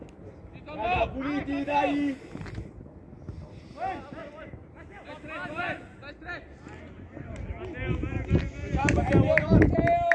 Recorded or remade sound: recorded